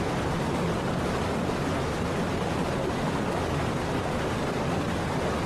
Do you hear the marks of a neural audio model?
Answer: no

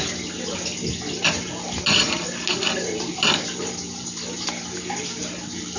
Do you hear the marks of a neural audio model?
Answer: no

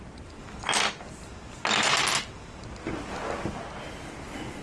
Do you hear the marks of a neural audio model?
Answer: no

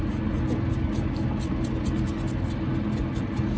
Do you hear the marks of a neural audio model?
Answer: no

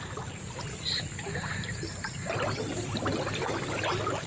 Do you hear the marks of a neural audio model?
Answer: no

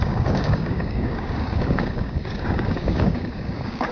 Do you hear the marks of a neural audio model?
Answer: yes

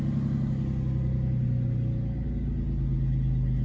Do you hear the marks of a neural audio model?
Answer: no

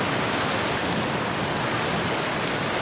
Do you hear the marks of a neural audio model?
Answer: no